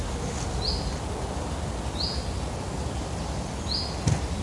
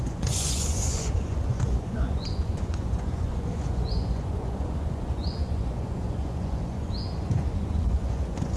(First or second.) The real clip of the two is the first